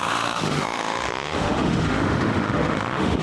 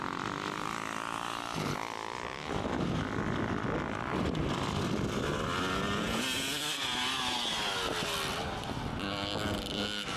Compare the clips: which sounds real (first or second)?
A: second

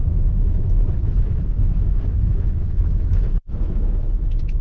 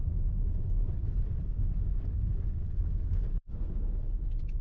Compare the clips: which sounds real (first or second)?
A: second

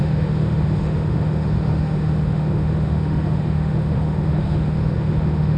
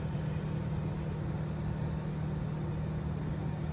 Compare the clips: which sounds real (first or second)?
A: second